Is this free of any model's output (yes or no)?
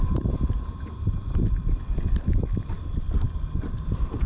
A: no